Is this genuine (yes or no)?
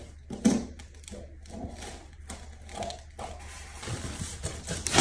yes